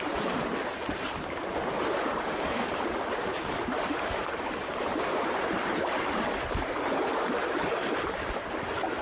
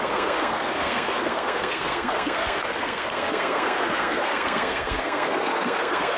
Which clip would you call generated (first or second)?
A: second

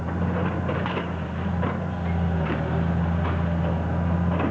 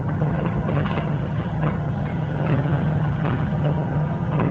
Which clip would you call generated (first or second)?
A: second